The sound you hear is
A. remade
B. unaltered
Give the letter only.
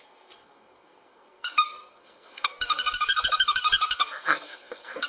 A